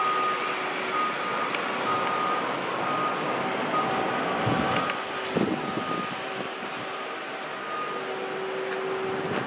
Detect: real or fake real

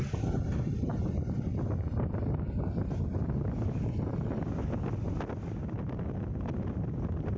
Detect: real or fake real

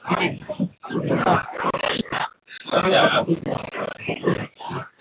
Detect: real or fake real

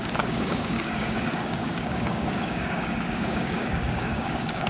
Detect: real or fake fake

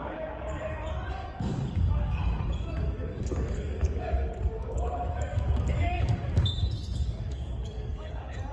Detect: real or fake fake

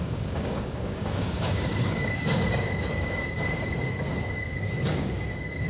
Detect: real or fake fake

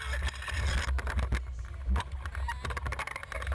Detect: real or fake real